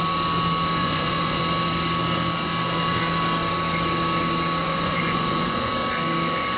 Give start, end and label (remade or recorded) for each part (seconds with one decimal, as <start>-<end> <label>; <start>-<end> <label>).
0.0-0.8 recorded; 0.8-1.4 remade; 1.4-4.6 recorded; 4.6-5.7 remade; 5.7-6.6 recorded